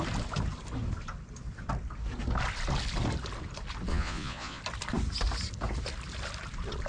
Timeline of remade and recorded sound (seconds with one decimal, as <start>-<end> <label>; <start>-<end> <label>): 0.0-3.9 recorded; 3.9-4.6 remade; 4.6-6.9 recorded